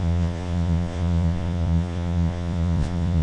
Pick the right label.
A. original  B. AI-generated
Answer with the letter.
B